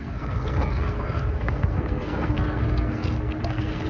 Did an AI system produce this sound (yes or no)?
yes